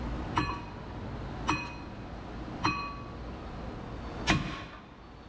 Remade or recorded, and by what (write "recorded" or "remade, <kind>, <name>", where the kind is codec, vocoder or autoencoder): recorded